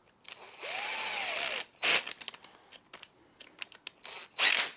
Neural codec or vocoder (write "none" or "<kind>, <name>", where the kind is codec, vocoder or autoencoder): none